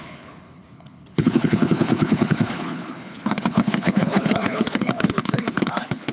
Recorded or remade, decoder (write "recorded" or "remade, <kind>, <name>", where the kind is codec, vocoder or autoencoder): remade, codec, HILCodec